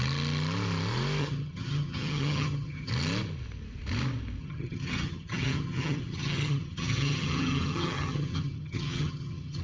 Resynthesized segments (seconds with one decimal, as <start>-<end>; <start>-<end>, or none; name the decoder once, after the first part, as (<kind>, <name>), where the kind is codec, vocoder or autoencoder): 1.2-2.9 (vocoder, HiFi-GAN); 4.4-9.6